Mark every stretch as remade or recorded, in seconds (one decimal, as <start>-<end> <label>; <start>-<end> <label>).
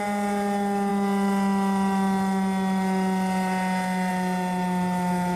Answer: 0.0-5.4 recorded